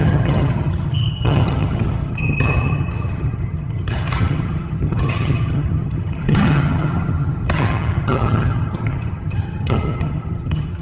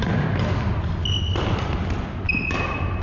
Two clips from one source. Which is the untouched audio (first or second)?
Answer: second